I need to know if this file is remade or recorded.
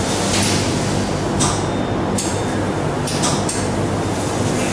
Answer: recorded